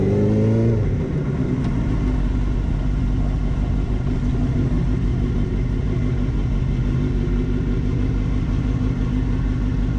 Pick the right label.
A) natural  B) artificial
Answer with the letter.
A